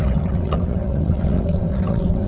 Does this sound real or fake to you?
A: fake